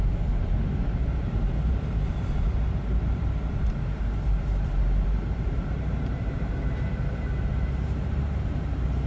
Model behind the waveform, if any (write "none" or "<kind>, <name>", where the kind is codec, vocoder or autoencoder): vocoder, BigVGAN v2